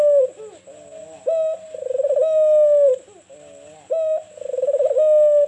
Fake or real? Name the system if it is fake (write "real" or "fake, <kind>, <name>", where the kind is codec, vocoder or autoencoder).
real